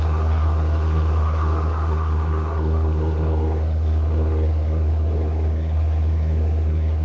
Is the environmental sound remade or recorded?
remade